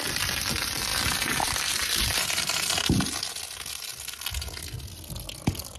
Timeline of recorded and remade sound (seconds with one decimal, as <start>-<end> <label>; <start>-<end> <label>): 0.0-0.9 recorded; 0.9-2.9 remade; 2.9-5.8 recorded